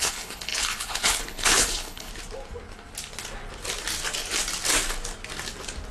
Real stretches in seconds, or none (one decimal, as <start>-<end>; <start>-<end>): 2.1-5.9